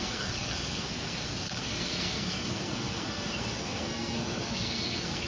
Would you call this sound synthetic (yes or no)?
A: yes